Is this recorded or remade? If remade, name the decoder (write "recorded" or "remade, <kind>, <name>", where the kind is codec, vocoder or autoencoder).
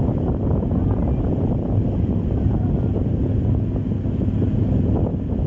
recorded